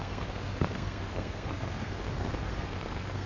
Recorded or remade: remade